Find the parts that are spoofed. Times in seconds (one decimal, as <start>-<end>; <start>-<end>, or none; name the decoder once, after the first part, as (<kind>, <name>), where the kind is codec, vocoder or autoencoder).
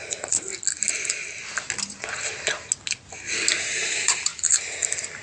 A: 0.0-0.5 (vocoder, BigVGAN v2); 3.6-5.2